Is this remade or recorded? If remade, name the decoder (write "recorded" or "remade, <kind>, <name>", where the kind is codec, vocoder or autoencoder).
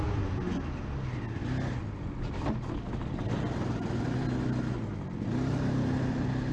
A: recorded